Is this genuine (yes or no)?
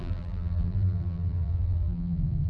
no